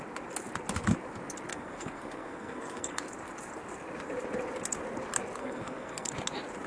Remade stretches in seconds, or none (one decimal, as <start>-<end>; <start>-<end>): 1.5-3.0; 5.4-6.1